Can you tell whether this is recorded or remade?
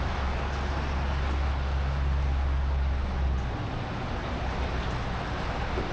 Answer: recorded